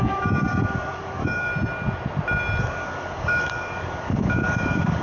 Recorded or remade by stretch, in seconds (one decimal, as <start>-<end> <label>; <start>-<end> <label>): 0.0-1.5 remade; 1.5-2.6 recorded; 2.6-5.0 remade